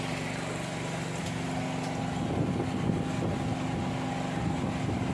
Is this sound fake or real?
real